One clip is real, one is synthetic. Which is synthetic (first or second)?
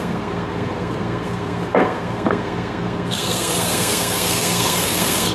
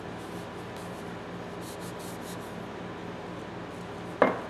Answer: first